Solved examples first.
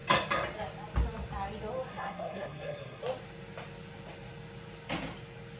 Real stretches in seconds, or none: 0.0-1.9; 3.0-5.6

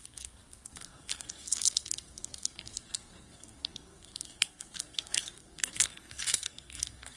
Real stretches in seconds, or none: none

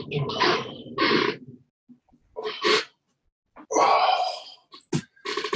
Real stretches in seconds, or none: 0.0-5.6